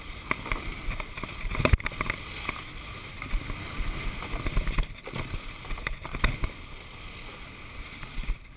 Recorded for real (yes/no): yes